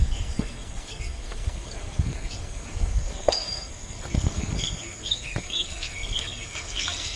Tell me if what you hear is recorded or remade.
remade